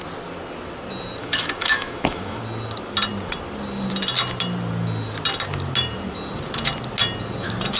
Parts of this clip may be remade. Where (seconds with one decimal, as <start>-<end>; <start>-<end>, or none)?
1.2-2.4